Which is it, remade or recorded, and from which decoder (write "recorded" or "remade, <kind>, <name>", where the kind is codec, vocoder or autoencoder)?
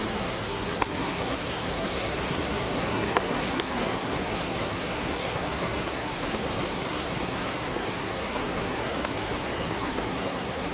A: remade, codec, SNAC